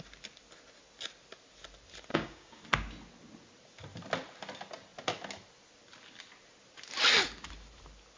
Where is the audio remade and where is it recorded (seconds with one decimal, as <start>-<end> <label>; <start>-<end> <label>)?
0.0-2.1 recorded; 2.1-2.6 remade; 2.6-8.2 recorded